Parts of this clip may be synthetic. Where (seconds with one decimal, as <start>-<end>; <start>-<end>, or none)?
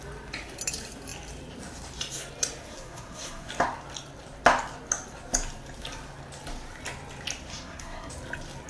2.7-3.5; 7.5-8.1